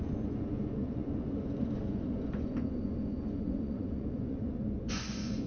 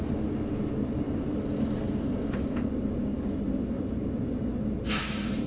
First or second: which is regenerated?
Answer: first